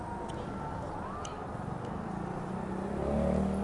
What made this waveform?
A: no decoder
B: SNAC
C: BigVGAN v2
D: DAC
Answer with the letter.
A